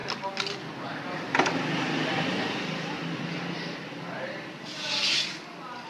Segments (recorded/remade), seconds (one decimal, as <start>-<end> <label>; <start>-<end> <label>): 0.0-5.9 recorded